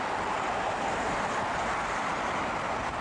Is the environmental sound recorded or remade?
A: recorded